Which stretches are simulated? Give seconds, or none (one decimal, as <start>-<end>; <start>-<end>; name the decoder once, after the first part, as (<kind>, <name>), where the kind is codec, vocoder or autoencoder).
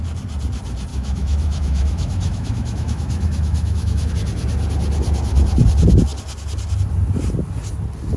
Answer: 0.9-4.1 (autoencoder, DAC-VAE)